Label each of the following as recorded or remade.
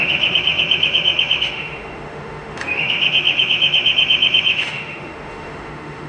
remade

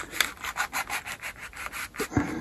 recorded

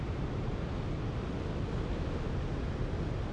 recorded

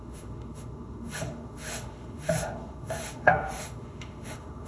remade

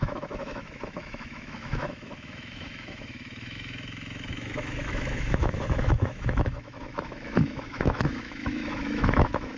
remade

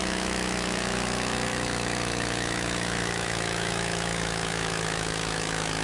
remade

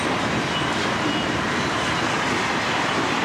recorded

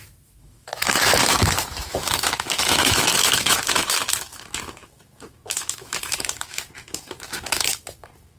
remade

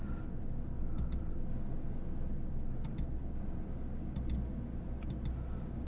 recorded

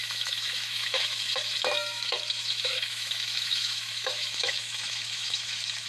remade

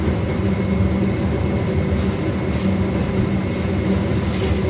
recorded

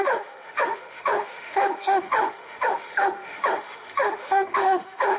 remade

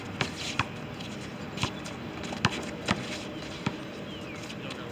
recorded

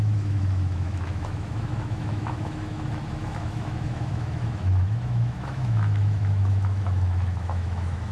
remade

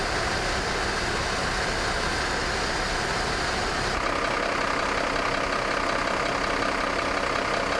recorded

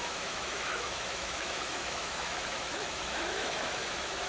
remade